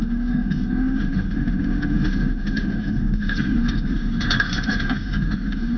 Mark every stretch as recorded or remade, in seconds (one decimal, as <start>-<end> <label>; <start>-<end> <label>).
0.0-5.8 remade